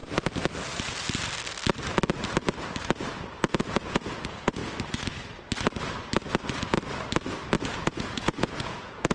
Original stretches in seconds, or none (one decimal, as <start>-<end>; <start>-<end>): 0.0-3.6; 4.6-7.6